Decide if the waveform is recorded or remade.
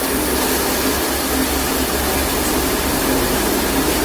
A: recorded